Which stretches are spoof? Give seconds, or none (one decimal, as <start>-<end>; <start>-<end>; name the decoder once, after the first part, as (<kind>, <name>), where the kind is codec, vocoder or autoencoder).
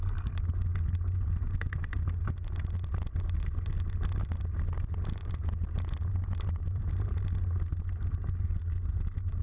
5.2-7.1 (vocoder, BigVGAN v2)